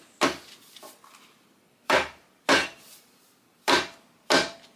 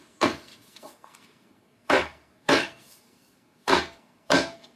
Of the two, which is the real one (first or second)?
first